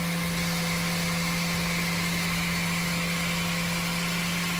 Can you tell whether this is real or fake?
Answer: real